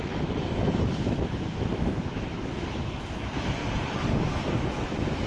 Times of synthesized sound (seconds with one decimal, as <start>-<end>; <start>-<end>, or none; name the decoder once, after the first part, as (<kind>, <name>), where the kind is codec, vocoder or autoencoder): 0.0-3.6 (autoencoder, DAC-VAE); 4.7-5.3